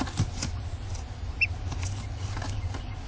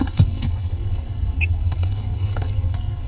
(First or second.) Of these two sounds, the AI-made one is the second